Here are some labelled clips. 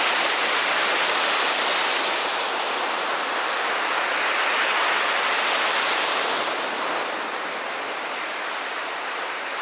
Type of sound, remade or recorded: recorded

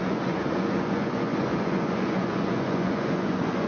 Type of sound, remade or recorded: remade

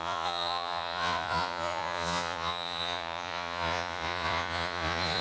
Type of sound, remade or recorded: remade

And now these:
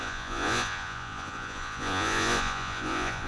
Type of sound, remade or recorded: remade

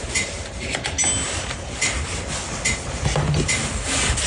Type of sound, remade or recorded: recorded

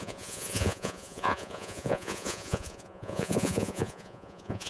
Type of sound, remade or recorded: remade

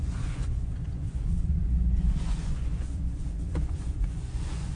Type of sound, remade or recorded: remade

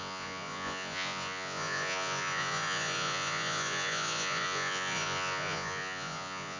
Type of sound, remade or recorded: remade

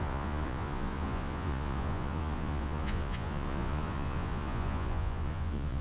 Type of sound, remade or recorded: remade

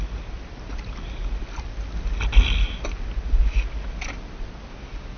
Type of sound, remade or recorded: recorded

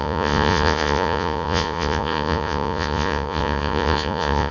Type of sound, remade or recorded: remade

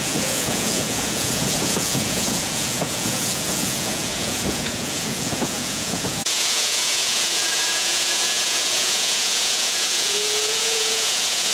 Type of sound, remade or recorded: remade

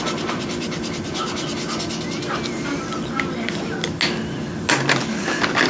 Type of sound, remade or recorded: recorded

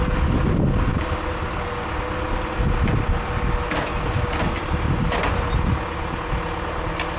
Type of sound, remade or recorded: recorded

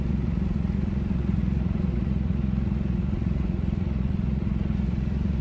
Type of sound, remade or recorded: remade